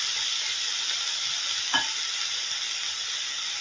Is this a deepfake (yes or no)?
no